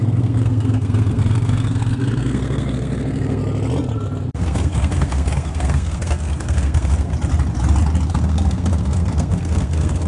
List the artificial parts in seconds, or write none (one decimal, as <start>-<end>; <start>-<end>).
0.0-3.4; 4.3-7.1; 8.1-10.1